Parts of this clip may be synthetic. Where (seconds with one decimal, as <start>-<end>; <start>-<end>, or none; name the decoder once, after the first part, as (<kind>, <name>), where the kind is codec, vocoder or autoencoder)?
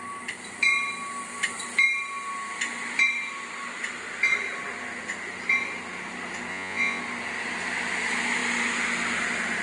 6.5-7.0 (vocoder, Vocos)